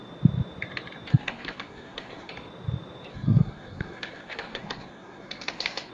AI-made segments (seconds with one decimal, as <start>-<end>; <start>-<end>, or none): 1.1-2.3; 3.1-5.9